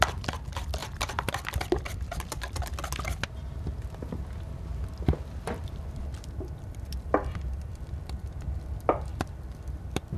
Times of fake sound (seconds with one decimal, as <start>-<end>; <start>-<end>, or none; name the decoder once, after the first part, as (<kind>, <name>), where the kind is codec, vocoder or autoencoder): 0.8-2.6 (vocoder, BigVGAN v2); 4.7-7.9; 9.1-10.2